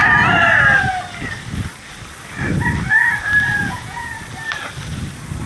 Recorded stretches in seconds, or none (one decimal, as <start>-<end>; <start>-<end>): 0.0-3.6; 4.1-5.5